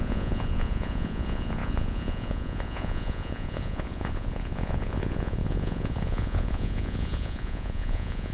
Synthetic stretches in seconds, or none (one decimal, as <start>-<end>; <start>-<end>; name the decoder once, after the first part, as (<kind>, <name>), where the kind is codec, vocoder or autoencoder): 0.0-8.3 (vocoder, Vocos)

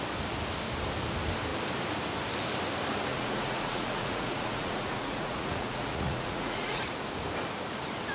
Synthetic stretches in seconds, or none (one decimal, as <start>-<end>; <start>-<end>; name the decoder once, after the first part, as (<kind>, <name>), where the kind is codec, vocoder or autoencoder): 3.1-6.8 (vocoder, Vocos)

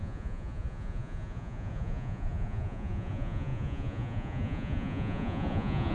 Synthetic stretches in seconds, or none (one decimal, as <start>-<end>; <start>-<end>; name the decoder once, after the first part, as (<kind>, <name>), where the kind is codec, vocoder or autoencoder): 0.0-5.9 (vocoder, Vocos)

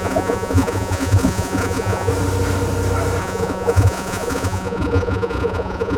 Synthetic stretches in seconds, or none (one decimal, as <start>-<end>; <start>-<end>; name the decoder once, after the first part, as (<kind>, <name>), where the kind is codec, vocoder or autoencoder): 0.0-2.1 (vocoder, Vocos); 3.2-6.0

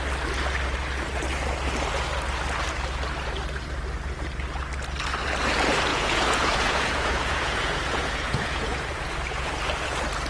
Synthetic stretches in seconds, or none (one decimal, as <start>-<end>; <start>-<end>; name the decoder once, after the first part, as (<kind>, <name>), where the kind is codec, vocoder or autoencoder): 5.9-9.5 (vocoder, Vocos)